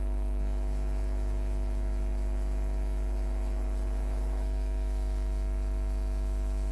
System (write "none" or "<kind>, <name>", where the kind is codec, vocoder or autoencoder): autoencoder, DAC-VAE